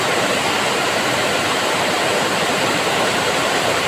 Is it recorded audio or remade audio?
remade